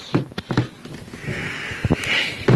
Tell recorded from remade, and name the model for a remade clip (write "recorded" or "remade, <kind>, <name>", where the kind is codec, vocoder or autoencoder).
recorded